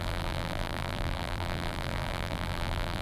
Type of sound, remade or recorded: remade